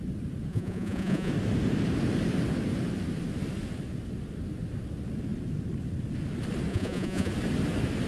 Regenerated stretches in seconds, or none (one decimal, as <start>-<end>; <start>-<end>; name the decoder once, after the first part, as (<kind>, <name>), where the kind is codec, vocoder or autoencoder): 0.5-1.3 (vocoder, Vocos); 6.7-7.3